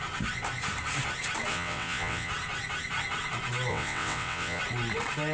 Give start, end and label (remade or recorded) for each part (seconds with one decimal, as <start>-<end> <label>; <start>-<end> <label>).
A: 0.0-1.5 recorded; 1.5-2.3 remade; 2.3-3.7 recorded; 3.7-4.6 remade; 4.6-5.3 recorded